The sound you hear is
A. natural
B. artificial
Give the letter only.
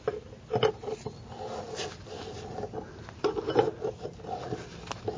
A